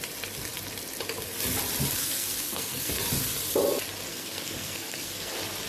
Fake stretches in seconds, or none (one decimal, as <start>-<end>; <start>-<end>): 2.0-2.9; 4.1-5.3